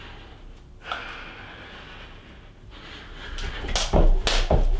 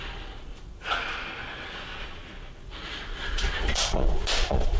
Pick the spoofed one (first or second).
second